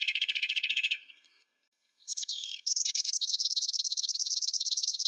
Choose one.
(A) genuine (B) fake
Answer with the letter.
B